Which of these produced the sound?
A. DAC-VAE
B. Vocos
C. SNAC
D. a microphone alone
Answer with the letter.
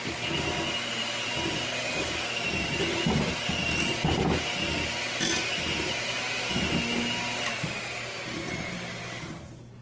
D